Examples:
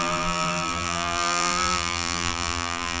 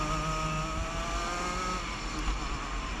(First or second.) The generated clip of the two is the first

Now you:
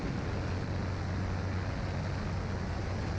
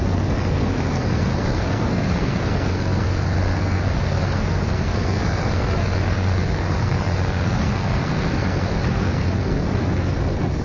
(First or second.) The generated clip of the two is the second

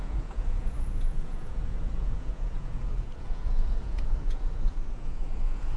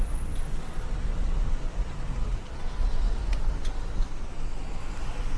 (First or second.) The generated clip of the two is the first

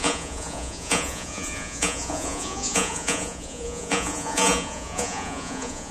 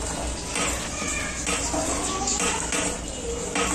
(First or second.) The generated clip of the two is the first